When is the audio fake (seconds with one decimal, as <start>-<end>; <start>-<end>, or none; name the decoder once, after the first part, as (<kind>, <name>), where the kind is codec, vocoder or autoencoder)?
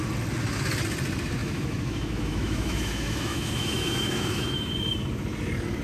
1.4-4.7 (autoencoder, DAC-VAE)